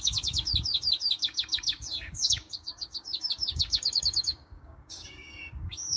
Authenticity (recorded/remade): remade